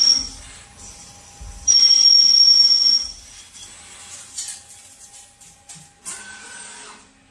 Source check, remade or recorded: recorded